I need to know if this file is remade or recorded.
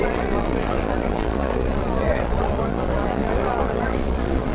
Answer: remade